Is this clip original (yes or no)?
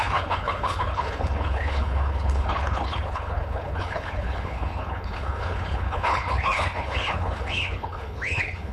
no